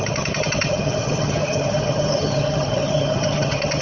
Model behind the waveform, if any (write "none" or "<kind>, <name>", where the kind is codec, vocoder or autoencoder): vocoder, HiFi-GAN